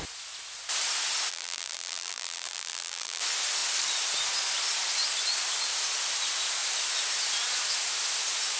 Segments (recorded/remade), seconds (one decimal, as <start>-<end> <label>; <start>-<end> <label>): 0.0-1.3 recorded; 1.3-3.2 remade; 3.2-8.6 recorded